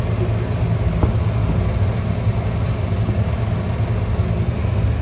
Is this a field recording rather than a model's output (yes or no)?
yes